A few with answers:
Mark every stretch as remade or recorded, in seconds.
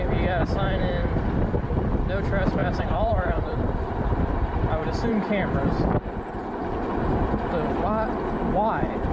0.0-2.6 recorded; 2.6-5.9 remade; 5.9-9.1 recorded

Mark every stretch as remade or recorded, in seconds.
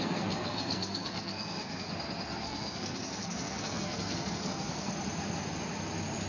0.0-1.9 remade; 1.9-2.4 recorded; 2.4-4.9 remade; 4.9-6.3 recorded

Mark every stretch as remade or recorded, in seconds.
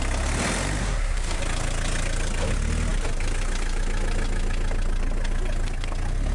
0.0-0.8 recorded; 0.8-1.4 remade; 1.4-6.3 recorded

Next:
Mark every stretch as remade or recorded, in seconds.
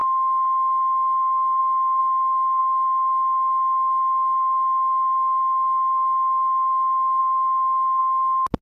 0.0-8.6 recorded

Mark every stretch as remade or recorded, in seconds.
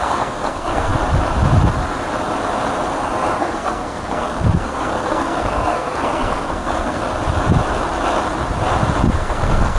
0.0-0.9 remade; 0.9-3.4 recorded; 3.4-7.1 remade; 7.1-9.1 recorded; 9.1-9.8 remade